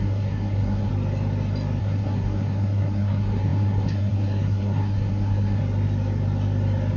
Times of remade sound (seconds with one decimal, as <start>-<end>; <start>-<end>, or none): 0.0-0.9; 1.8-5.6

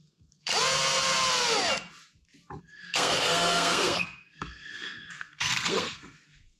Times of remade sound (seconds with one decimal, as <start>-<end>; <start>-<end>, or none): 0.0-0.5; 2.6-6.6